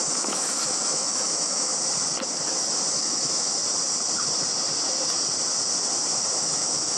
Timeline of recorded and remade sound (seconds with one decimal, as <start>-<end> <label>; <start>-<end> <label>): 0.0-1.7 remade; 1.7-2.9 recorded; 2.9-3.6 remade; 3.6-6.4 recorded; 6.4-7.0 remade